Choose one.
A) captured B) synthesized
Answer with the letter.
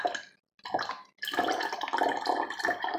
A